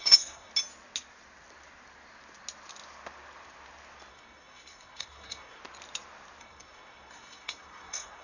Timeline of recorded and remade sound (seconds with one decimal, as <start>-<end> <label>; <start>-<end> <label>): 0.0-0.5 remade; 0.5-4.1 recorded; 4.1-5.6 remade; 5.6-6.4 recorded; 6.4-8.2 remade